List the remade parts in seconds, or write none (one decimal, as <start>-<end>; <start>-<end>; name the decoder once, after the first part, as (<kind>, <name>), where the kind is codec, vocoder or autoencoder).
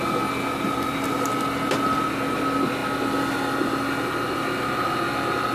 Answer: none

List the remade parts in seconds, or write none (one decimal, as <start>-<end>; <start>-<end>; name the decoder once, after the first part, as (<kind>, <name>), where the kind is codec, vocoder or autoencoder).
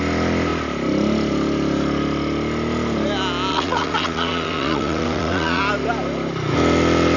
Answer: 3.5-5.6 (vocoder, WaveNeXt)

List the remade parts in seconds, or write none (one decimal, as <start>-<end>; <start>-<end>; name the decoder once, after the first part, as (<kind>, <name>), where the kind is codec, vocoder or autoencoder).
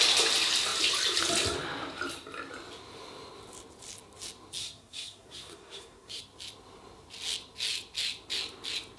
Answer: 4.6-6.2 (codec, SNAC)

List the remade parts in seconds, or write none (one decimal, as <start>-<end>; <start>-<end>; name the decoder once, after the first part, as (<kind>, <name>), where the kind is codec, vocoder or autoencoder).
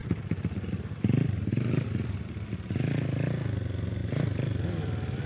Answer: none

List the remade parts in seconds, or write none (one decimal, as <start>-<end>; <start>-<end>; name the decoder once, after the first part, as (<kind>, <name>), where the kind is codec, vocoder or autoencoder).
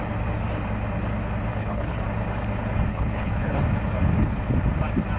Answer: 1.5-2.0 (codec, HILCodec); 2.9-3.6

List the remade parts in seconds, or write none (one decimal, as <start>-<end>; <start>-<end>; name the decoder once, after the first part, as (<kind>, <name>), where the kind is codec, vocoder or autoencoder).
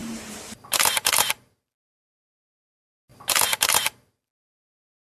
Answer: none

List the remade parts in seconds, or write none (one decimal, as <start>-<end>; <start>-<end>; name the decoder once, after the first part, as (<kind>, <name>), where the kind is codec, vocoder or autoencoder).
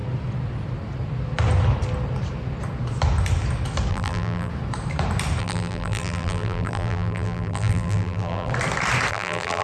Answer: 3.9-4.5 (vocoder, BigVGAN v2); 5.4-8.5; 9.1-9.6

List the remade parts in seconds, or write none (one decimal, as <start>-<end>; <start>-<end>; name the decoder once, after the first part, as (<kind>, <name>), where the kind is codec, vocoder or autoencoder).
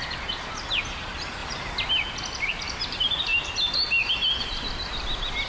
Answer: 0.0-1.4 (vocoder, BigVGAN v2); 1.9-3.3; 4.4-5.5